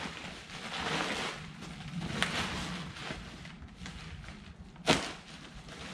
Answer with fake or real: real